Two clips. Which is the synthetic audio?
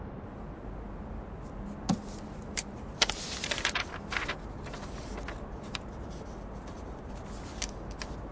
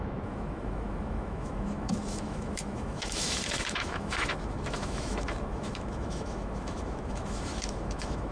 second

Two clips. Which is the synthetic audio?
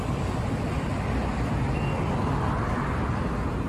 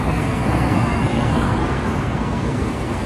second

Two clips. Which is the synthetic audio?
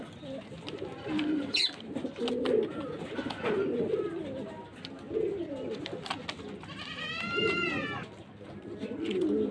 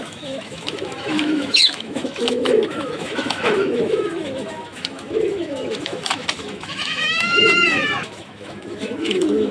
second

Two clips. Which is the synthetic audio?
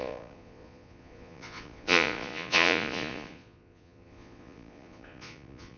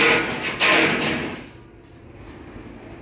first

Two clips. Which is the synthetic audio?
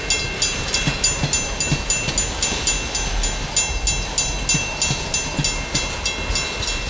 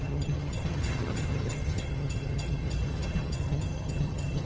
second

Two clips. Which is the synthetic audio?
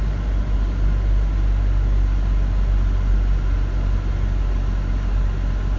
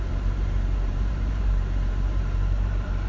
second